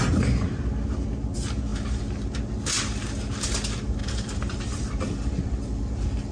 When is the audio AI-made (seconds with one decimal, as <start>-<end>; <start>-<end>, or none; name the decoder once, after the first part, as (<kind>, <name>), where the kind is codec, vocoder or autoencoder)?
4.0-6.3 (vocoder, BigVGAN v2)